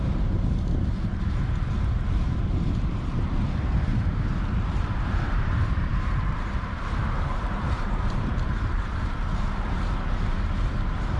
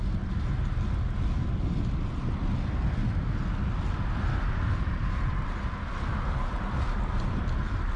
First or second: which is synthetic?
first